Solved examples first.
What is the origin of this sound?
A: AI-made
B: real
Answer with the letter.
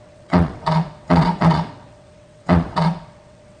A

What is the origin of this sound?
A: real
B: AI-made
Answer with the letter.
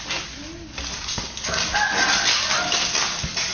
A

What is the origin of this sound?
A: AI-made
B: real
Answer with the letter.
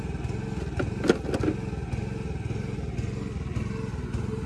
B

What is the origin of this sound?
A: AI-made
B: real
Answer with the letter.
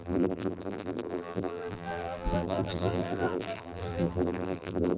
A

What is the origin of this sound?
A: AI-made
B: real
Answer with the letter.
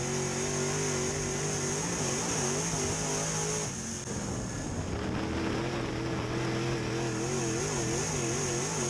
B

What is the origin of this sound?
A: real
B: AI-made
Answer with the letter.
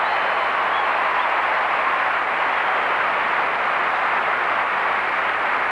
A